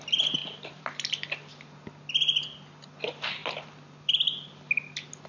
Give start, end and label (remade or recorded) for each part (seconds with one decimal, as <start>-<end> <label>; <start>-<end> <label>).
0.0-0.4 recorded; 0.4-1.1 remade; 1.1-3.4 recorded; 3.4-4.1 remade; 4.1-5.3 recorded